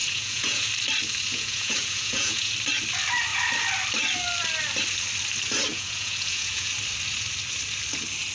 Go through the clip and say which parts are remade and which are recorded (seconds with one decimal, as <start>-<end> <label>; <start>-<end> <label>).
0.0-0.7 remade; 0.7-1.3 recorded; 1.3-2.5 remade; 2.5-5.7 recorded; 5.7-6.7 remade; 6.7-8.3 recorded